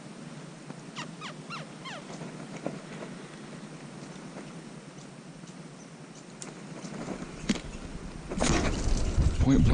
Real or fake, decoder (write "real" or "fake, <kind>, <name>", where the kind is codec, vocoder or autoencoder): real